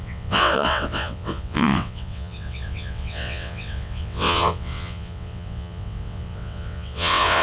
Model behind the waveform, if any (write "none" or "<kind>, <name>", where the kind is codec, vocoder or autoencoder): vocoder, WaveNeXt